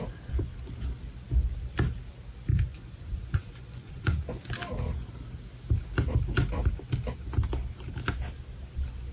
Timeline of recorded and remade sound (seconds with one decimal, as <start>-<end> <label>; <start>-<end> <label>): 0.0-2.5 recorded; 2.5-4.4 remade; 4.4-9.1 recorded